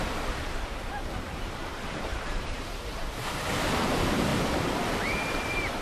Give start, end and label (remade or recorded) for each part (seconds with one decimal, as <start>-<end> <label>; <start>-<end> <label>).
0.0-4.3 remade; 4.3-5.2 recorded; 5.2-5.8 remade